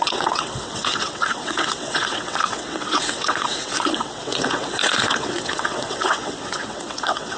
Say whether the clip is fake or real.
fake